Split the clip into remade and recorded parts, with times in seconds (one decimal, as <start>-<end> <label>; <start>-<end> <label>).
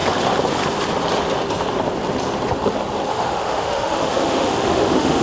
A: 0.0-3.1 recorded; 3.1-5.2 remade